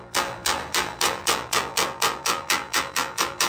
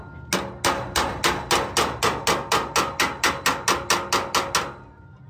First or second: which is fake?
first